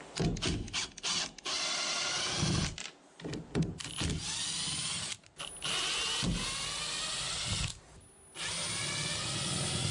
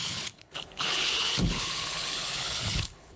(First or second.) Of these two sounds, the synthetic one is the second